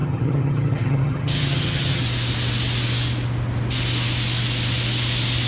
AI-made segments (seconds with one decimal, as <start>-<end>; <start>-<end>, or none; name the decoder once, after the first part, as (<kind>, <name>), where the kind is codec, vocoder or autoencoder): 0.0-2.0 (vocoder, HiFi-GAN)